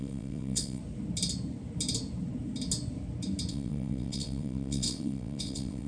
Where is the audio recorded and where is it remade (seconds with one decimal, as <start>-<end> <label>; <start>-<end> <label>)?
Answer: 0.0-0.8 remade; 0.8-3.5 recorded; 3.5-5.9 remade